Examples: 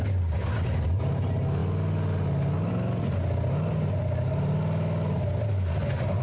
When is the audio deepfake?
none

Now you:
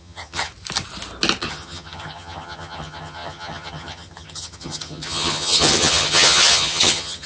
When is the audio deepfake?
0.0-0.5; 1.4-7.3

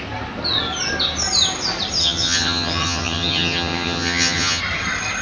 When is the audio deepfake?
2.0-4.6

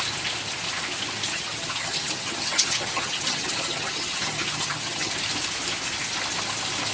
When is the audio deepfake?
1.3-5.1

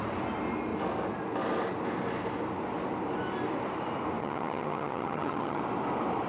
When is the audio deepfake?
4.2-5.6